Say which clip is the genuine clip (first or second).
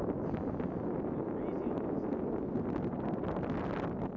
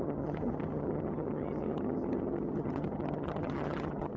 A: first